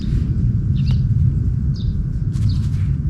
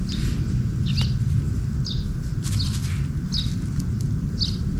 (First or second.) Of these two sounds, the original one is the second